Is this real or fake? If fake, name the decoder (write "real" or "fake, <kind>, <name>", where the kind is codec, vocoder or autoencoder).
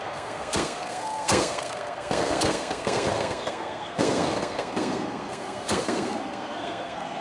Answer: fake, codec, SNAC